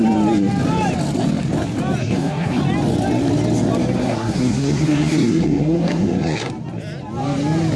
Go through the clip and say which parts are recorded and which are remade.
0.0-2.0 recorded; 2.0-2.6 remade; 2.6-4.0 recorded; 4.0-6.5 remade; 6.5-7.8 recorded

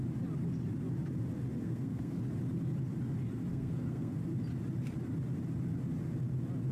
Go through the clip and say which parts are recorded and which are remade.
0.0-1.6 recorded; 1.6-2.2 remade; 2.2-3.5 recorded; 3.5-4.2 remade; 4.2-6.7 recorded